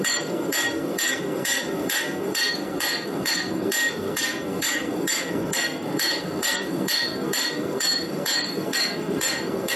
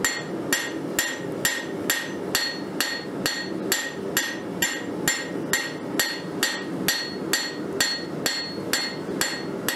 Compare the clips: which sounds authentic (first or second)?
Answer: second